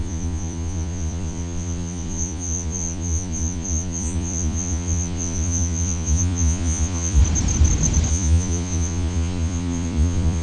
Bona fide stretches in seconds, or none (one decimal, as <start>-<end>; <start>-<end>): 7.2-8.1